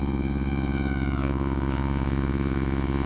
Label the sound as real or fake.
fake